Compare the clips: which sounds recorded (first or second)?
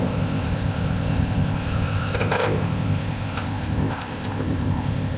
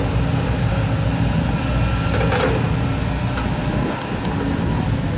second